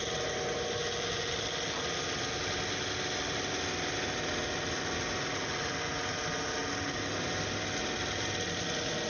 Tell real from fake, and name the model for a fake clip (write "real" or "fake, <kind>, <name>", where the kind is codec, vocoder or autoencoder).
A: real